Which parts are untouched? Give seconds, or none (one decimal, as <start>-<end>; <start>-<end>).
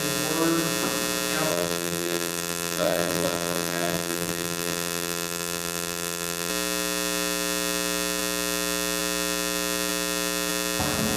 0.0-1.5; 6.5-11.2